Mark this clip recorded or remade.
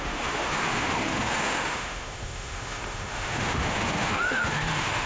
remade